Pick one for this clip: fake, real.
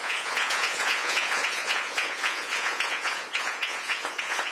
fake